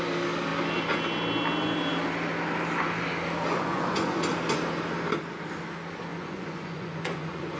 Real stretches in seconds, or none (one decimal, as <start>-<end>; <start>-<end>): 0.0-3.5; 4.3-6.1